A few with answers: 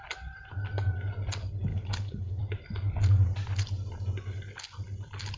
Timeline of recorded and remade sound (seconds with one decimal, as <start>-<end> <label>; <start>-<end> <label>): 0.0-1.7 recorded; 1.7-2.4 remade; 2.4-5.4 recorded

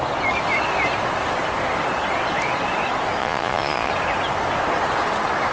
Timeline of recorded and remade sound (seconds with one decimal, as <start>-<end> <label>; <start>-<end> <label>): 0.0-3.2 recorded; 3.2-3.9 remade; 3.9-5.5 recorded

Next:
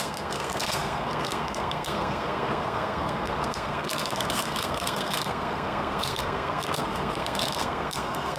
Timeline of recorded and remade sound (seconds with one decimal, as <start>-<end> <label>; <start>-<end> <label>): 0.0-8.4 remade